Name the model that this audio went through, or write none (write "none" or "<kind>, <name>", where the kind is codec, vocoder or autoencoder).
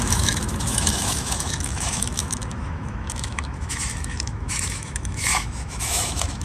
autoencoder, DAC-VAE